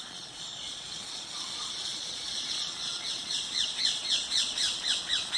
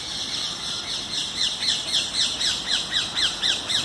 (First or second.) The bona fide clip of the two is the second